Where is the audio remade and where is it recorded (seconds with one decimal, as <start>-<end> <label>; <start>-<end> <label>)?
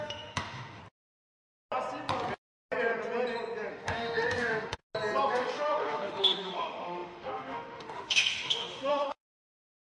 0.0-0.8 remade; 0.8-3.7 recorded; 3.7-4.8 remade; 4.8-5.3 recorded; 5.3-9.8 remade